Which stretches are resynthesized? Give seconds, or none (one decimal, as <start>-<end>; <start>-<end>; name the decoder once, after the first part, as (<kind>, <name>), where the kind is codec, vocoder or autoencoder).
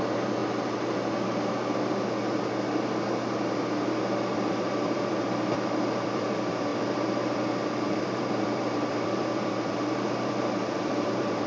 0.0-0.4 (vocoder, BigVGAN v2); 4.3-11.5